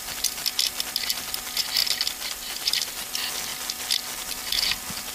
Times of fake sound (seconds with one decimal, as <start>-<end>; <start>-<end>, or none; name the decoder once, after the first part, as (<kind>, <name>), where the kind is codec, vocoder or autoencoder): none